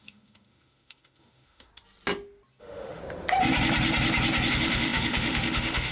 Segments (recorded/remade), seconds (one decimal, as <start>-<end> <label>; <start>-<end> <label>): 0.0-1.7 remade; 1.7-2.6 recorded; 2.6-3.0 remade; 3.0-4.5 recorded; 4.5-5.9 remade